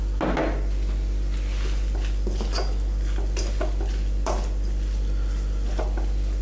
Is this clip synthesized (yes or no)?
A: no